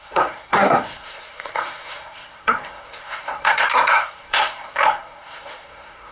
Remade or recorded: remade